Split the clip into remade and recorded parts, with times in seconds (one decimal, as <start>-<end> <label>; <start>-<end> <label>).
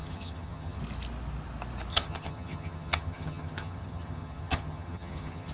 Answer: 0.0-0.8 remade; 0.8-1.9 recorded; 1.9-5.5 remade